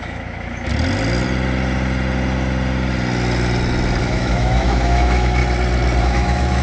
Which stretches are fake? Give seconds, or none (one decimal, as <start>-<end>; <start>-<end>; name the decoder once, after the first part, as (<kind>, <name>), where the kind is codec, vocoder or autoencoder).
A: 0.0-0.7 (autoencoder, DAC-VAE); 4.0-5.4; 6.0-6.6